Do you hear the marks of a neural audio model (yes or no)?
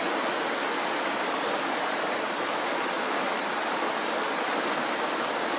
no